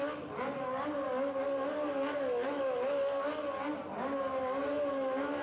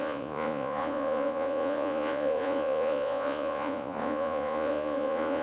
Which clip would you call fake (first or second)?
second